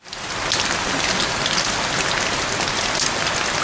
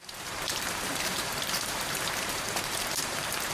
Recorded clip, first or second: first